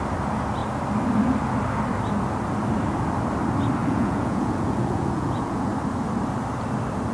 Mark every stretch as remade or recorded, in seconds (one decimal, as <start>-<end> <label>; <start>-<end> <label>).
0.0-3.8 recorded; 3.8-5.7 remade; 5.7-7.1 recorded